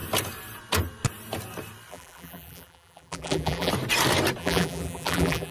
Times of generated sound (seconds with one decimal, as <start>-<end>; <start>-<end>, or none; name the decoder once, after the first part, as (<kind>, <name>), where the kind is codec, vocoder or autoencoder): 1.9-3.7 (vocoder, BigVGAN v2); 4.4-5.5